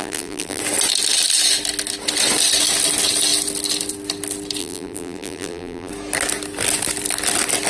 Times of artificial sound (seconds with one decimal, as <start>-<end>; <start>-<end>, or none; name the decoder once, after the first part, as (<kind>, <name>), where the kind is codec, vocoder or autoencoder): 0.0-0.6 (vocoder, BigVGAN v2); 4.6-5.9